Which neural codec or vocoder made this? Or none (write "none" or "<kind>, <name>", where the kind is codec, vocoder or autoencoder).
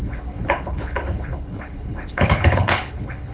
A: codec, HILCodec